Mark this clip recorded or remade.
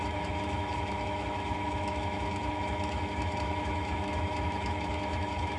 remade